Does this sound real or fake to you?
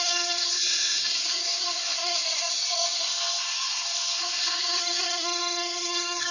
fake